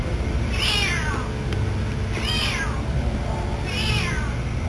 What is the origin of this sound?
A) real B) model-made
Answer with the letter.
B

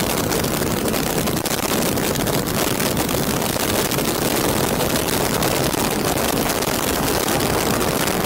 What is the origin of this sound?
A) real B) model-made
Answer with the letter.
B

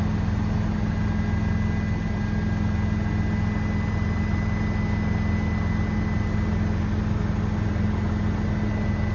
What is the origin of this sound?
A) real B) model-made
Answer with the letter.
A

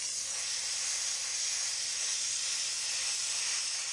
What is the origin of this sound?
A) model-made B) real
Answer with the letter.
B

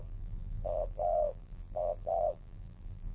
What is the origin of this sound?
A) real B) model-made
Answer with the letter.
B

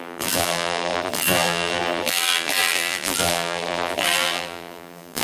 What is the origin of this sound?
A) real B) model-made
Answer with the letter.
B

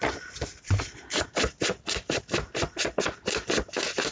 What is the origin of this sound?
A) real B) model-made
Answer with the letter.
A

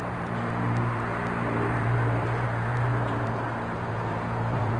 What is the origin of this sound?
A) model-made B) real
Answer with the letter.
A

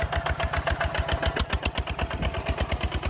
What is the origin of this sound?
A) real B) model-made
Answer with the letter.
A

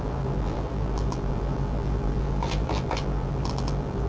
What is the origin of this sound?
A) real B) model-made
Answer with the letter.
B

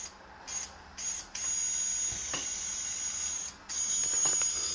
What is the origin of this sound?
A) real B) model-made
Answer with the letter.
A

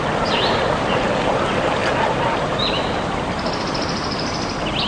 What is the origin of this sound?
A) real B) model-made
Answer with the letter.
B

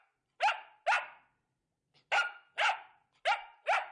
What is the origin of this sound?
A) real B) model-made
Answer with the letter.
A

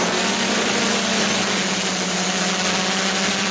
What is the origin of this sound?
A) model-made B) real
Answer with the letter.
B